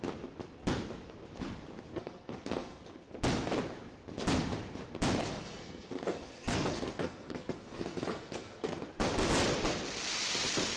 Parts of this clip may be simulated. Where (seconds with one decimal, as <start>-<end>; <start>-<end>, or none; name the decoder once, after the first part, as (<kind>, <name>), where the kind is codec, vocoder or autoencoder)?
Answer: 1.9-3.1 (codec, SNAC); 5.2-8.8